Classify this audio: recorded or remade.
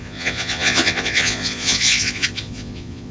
remade